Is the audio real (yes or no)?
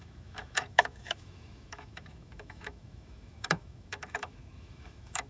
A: no